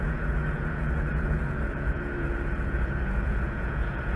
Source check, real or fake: fake